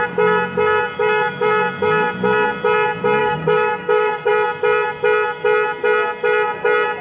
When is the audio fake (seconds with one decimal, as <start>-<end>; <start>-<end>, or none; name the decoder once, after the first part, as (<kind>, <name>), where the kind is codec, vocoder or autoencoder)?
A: 3.2-4.3 (codec, DAC)